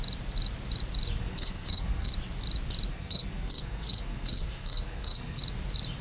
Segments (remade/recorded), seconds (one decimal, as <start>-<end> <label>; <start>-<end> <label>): 0.0-1.2 recorded; 1.2-2.1 remade; 2.1-2.9 recorded; 2.9-5.4 remade; 5.4-6.0 recorded